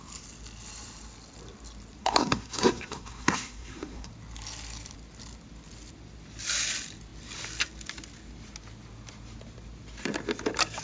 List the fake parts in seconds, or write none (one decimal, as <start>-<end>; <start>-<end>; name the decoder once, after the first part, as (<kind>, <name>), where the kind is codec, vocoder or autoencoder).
2.0-4.1 (codec, SNAC)